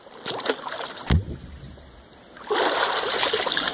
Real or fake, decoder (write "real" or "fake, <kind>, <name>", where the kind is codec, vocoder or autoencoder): real